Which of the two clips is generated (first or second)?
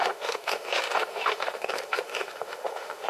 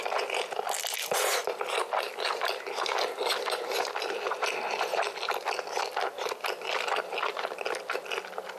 first